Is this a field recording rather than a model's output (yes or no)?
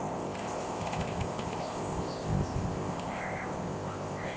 no